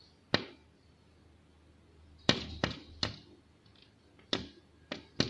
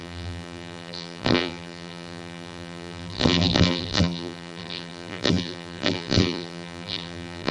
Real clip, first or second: first